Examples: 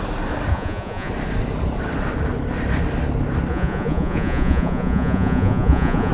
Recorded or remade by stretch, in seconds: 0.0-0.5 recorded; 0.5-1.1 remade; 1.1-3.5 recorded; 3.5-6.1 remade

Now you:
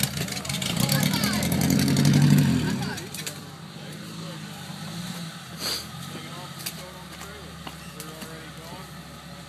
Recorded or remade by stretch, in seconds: 0.0-9.5 recorded

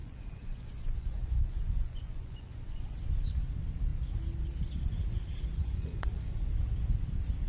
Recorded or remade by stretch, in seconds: 0.0-2.8 remade; 2.8-5.6 recorded; 5.6-6.5 remade; 6.5-7.5 recorded

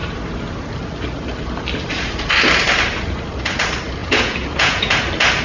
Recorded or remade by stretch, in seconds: 0.0-4.0 recorded; 4.0-4.9 remade; 4.9-5.4 recorded

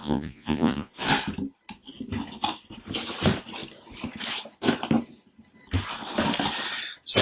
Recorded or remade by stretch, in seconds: 0.0-0.9 remade; 0.9-7.2 recorded

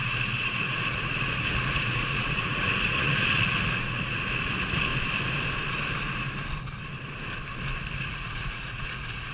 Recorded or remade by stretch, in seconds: 0.0-4.9 remade; 4.9-8.1 recorded; 8.1-9.3 remade

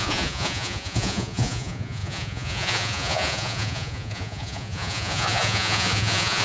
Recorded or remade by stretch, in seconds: 0.0-6.4 remade

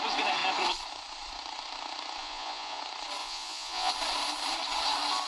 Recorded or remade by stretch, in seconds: 0.0-2.2 recorded; 2.2-2.8 remade; 2.8-3.2 recorded; 3.2-3.9 remade; 3.9-5.3 recorded